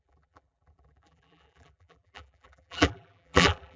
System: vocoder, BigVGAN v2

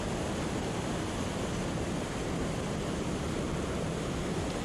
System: none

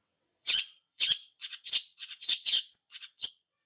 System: vocoder, WaveNeXt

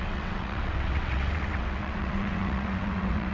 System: vocoder, WaveNeXt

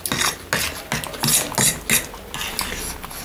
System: none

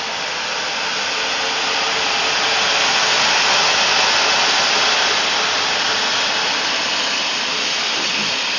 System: none